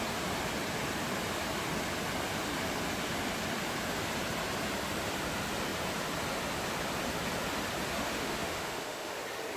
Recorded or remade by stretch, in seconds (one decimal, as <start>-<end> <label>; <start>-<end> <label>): 0.0-7.9 recorded; 7.9-9.2 remade; 9.2-9.6 recorded